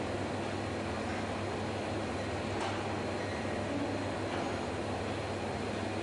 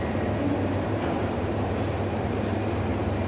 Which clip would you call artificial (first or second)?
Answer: second